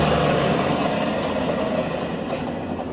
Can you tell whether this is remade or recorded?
recorded